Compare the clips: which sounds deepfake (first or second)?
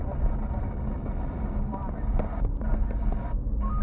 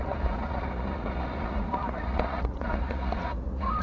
second